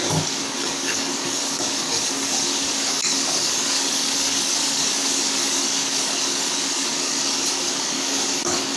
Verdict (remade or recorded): remade